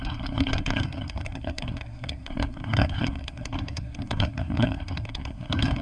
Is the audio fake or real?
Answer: fake